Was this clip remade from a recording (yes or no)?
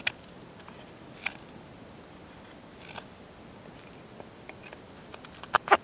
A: no